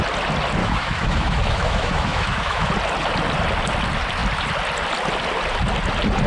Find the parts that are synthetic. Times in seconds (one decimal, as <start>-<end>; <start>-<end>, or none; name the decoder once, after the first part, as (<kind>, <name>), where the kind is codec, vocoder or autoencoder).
0.6-2.7 (autoencoder, DAC-VAE)